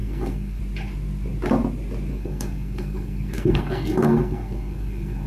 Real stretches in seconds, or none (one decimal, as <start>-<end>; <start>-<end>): 0.6-2.1